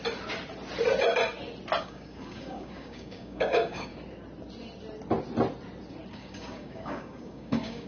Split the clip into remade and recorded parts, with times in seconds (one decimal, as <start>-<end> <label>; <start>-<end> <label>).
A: 0.0-1.8 recorded; 1.8-3.9 remade; 3.9-6.1 recorded; 6.1-7.9 remade